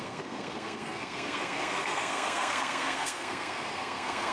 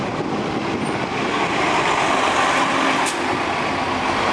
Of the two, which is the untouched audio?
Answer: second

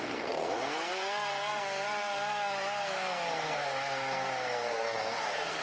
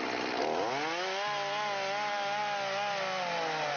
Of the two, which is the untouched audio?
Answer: second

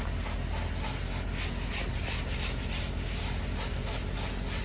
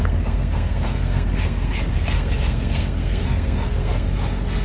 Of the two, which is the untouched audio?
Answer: first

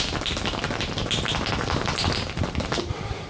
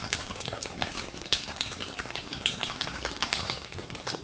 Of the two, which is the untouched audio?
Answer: first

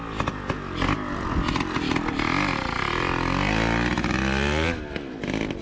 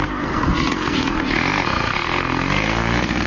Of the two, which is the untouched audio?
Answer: first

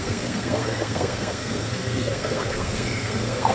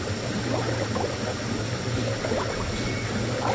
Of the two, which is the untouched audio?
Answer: second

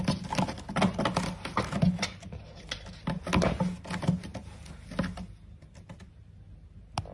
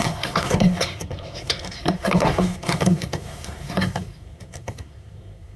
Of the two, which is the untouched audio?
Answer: first